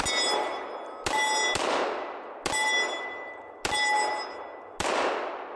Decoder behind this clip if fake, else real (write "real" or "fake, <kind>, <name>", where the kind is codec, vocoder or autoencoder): real